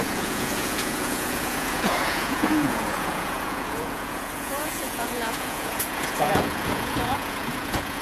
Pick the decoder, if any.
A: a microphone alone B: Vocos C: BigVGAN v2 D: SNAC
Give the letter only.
B